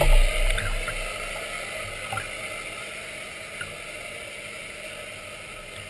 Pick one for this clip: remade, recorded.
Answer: recorded